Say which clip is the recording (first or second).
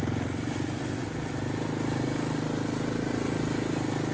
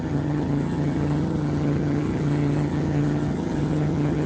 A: first